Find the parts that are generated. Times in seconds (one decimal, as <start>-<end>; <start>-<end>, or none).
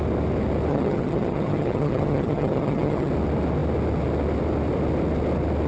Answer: 0.7-3.1